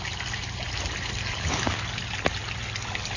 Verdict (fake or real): real